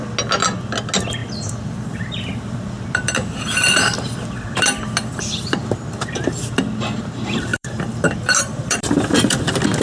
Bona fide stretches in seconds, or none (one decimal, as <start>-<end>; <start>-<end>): 0.0-1.2; 5.7-7.5; 9.4-9.8